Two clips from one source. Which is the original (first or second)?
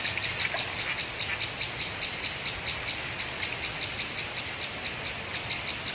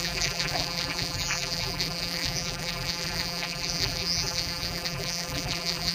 first